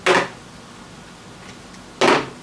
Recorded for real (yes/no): yes